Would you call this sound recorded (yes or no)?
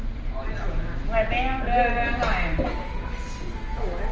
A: yes